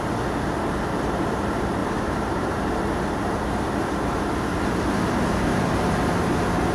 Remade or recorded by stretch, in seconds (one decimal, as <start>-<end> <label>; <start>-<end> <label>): 0.0-1.8 recorded; 1.8-2.7 remade; 2.7-6.7 recorded